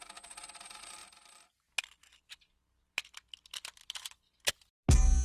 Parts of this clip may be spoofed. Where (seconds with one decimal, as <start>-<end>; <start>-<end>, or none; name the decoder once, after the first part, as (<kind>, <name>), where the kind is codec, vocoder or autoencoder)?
none